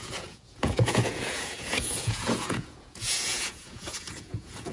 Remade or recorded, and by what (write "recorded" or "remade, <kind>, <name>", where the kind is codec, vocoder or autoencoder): remade, vocoder, Vocos